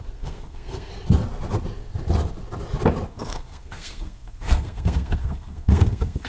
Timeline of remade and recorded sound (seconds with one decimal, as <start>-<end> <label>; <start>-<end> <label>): 0.0-0.9 remade; 0.9-3.1 recorded; 3.1-6.3 remade